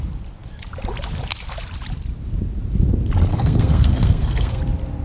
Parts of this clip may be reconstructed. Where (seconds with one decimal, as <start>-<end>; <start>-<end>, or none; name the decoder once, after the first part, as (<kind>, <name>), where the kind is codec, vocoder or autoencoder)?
3.3-4.6 (codec, SNAC)